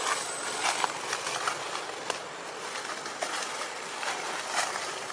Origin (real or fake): real